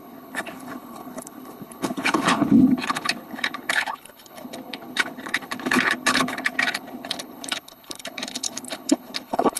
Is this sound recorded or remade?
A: remade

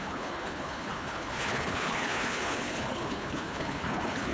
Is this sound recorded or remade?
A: remade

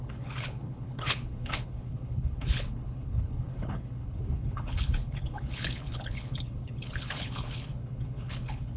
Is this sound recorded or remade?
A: remade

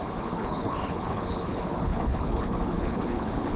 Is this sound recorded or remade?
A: remade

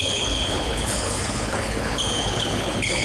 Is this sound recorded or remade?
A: remade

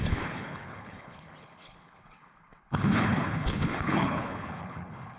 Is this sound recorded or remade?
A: remade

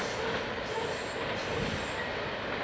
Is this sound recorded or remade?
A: recorded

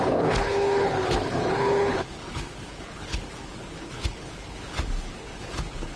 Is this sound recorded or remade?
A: remade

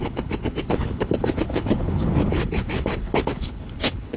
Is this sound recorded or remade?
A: remade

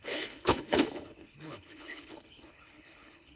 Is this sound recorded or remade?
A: remade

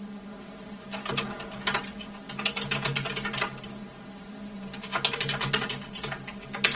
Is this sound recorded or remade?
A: recorded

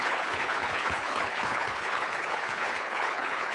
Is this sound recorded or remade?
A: remade